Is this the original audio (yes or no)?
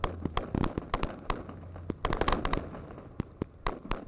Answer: yes